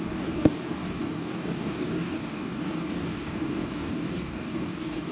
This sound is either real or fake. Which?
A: fake